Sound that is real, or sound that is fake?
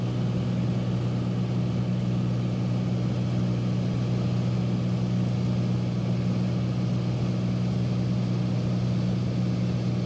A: real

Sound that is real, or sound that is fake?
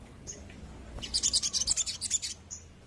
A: real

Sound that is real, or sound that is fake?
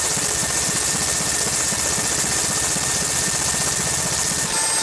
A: real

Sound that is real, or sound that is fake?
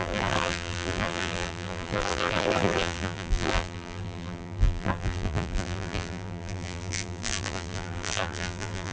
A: fake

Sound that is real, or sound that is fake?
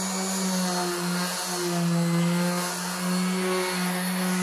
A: real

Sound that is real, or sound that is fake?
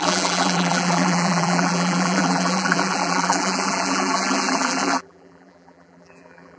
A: fake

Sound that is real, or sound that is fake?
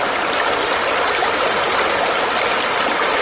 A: real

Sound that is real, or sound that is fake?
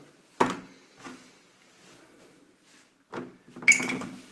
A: real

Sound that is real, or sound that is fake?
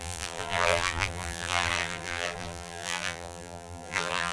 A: fake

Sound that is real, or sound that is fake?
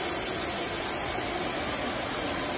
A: real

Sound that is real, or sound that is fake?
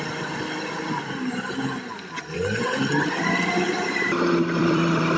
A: fake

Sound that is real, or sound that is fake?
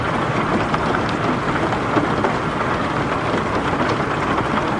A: real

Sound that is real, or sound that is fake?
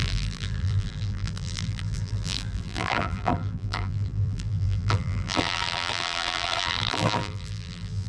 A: fake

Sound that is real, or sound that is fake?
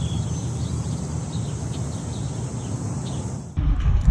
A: real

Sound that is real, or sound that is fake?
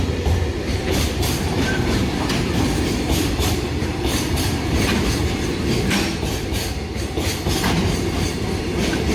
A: fake